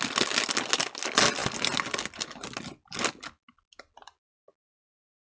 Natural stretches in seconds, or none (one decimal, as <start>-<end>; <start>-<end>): 0.0-5.2